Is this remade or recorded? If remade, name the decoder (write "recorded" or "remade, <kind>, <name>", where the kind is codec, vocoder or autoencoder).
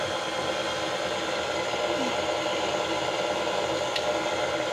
recorded